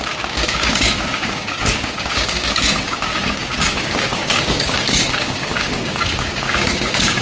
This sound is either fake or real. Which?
fake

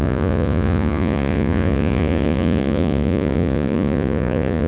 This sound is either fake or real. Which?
fake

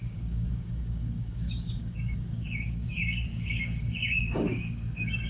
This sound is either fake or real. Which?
fake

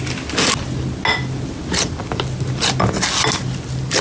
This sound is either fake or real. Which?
real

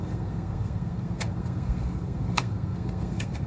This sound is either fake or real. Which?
fake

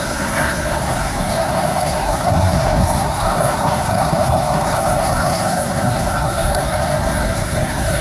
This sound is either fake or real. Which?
fake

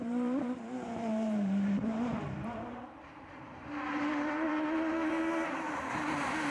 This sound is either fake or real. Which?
fake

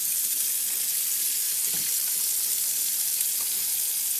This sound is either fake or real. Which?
real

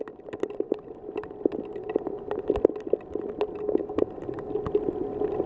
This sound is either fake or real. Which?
real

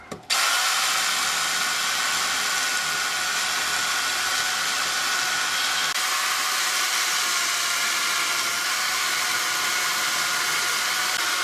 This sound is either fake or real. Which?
real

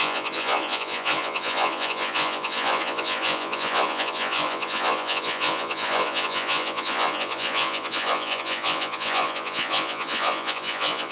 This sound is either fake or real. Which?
fake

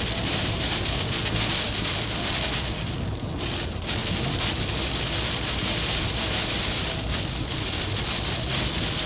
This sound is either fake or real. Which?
real